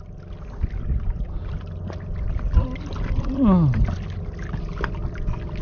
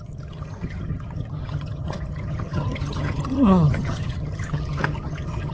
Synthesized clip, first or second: second